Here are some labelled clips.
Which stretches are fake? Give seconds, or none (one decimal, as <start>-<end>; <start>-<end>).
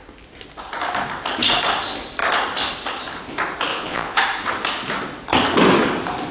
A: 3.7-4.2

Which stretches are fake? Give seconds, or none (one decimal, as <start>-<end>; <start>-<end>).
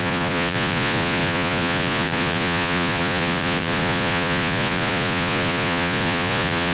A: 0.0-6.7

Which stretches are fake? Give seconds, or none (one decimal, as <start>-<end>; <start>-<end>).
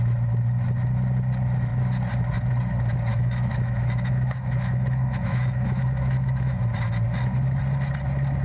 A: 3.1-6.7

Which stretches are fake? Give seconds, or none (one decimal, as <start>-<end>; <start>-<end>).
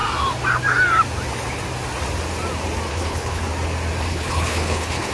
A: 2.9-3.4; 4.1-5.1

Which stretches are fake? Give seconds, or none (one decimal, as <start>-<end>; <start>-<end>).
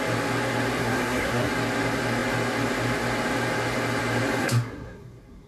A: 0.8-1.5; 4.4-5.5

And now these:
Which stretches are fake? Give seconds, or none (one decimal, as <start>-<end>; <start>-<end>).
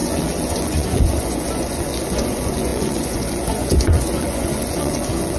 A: 0.0-5.4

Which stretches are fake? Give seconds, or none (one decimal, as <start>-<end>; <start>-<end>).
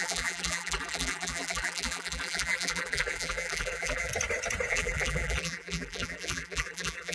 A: 0.0-4.1; 4.7-7.1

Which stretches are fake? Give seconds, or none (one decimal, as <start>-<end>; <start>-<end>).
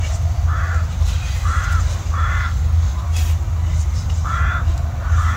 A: 2.4-3.0